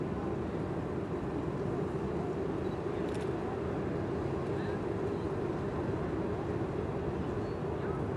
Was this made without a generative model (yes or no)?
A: yes